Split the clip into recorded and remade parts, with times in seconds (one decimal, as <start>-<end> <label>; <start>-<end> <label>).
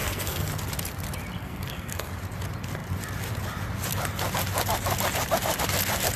0.0-0.5 remade; 0.5-1.4 recorded; 1.4-2.1 remade; 2.1-6.2 recorded